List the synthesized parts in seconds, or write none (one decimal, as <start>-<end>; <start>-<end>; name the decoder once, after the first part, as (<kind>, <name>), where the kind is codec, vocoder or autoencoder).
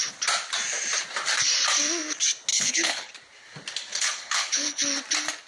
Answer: 2.5-3.1 (codec, HILCodec); 3.9-4.8